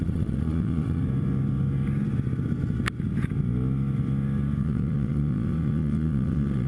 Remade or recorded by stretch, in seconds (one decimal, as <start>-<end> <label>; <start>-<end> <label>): 0.0-1.0 remade; 1.0-4.6 recorded; 4.6-6.7 remade